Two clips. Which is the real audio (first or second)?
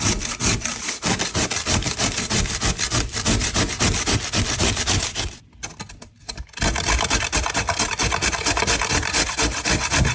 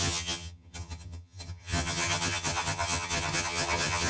first